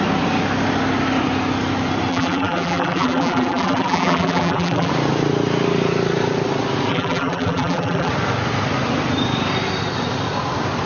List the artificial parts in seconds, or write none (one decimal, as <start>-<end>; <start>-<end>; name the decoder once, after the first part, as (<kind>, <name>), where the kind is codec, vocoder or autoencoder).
2.1-4.9 (vocoder, BigVGAN v2); 6.9-8.1